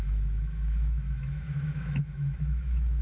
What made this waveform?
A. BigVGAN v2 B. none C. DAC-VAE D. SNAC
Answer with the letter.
C